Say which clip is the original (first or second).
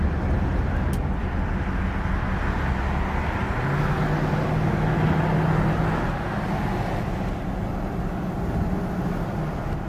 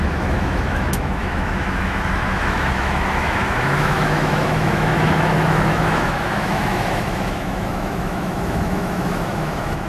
first